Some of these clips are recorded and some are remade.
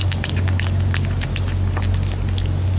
recorded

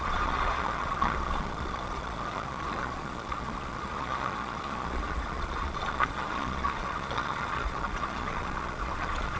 remade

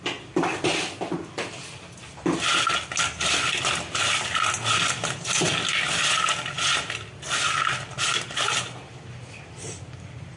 recorded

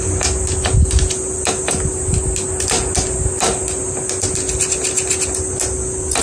recorded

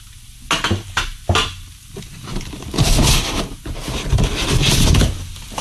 recorded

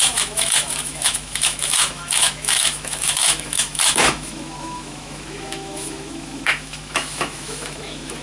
remade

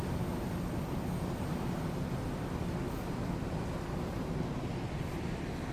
recorded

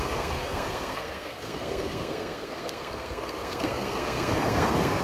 remade